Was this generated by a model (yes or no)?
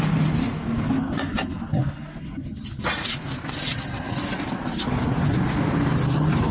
no